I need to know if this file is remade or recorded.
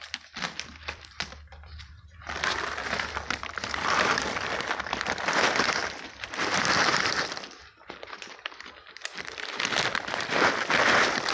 remade